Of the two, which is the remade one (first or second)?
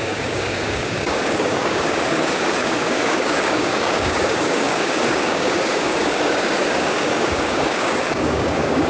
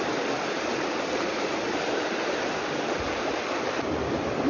first